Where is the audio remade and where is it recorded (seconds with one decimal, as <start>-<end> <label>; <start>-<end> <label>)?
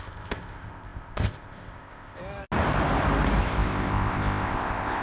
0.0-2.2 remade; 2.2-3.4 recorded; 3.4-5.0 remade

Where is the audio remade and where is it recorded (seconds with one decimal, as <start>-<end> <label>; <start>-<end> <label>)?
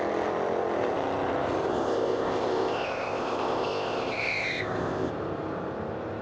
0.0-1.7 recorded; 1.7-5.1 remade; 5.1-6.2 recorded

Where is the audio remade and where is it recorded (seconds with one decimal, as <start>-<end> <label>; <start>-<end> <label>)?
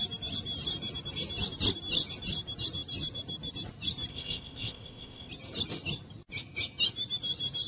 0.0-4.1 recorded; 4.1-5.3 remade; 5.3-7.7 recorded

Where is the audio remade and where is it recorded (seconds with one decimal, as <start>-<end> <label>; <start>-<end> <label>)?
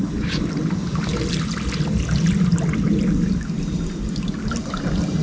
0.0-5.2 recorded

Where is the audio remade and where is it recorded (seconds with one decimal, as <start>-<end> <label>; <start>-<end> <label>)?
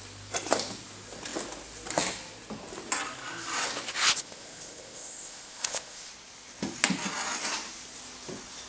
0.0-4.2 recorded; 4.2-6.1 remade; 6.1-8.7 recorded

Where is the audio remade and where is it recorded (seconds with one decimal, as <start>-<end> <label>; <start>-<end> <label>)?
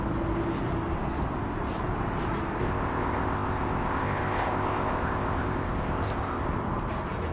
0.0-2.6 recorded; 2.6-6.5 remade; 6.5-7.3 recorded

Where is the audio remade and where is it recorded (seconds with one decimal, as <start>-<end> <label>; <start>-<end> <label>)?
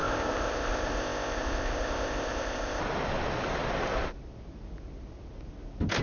0.0-2.8 remade; 2.8-6.0 recorded